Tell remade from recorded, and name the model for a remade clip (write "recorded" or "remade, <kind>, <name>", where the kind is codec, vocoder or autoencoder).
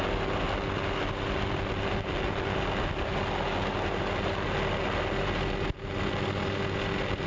recorded